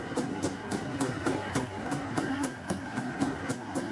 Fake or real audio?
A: fake